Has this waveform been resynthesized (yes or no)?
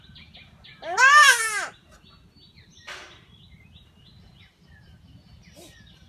no